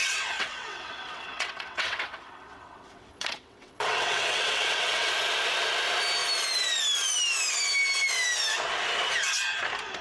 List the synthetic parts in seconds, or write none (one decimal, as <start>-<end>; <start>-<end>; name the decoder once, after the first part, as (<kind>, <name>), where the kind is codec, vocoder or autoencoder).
0.0-5.1 (vocoder, WaveNeXt)